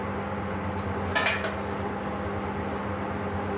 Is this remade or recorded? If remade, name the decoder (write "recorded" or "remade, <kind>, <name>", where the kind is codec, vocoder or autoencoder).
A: recorded